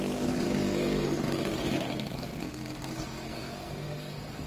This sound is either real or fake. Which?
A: fake